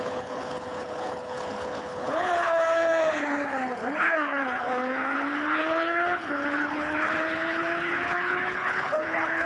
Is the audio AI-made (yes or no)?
yes